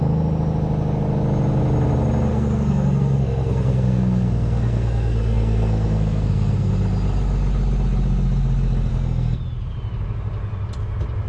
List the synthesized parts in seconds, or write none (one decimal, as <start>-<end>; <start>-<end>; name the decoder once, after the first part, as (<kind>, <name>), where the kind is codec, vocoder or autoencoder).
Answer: 2.3-6.7 (codec, SNAC); 8.9-9.4